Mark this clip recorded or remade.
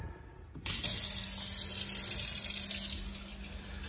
recorded